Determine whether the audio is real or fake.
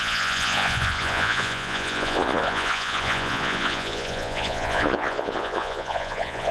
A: fake